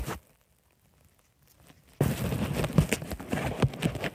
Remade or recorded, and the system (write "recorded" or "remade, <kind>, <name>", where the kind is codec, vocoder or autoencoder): recorded